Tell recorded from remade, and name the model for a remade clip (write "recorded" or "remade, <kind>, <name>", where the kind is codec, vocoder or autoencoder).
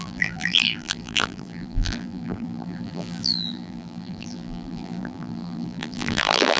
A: remade, vocoder, BigVGAN v2